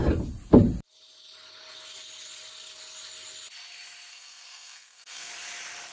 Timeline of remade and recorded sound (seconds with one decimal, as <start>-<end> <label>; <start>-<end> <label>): 0.0-4.1 recorded; 4.1-5.3 remade; 5.3-5.9 recorded